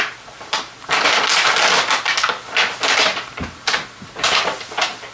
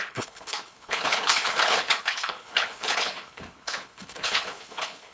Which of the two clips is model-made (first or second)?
second